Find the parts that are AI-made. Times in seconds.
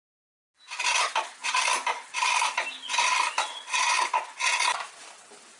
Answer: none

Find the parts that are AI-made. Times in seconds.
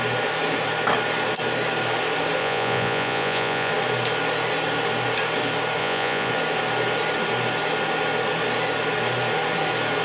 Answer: 2.4-3.7 (vocoder, Vocos); 5.8-6.3